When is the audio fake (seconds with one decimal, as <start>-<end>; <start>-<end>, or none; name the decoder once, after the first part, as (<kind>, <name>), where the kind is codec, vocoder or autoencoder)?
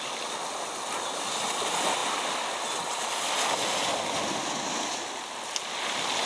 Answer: none